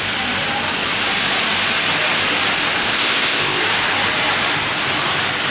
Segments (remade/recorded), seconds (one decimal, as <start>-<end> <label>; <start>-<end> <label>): 0.0-2.8 recorded; 2.8-3.6 remade; 3.6-5.5 recorded